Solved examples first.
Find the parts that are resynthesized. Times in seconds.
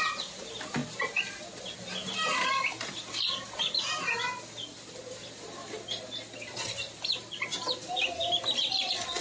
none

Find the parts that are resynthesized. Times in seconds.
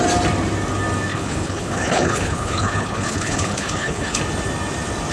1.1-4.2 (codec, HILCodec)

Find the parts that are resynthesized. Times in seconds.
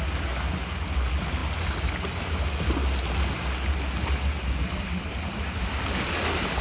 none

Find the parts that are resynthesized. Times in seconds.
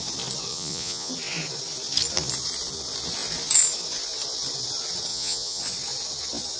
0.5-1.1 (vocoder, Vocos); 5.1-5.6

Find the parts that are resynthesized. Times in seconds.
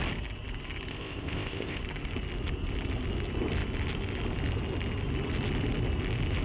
0.9-1.8 (codec, ZipCodec)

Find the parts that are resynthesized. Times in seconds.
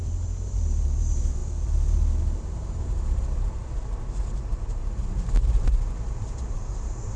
0.0-7.2 (vocoder, BigVGAN v2)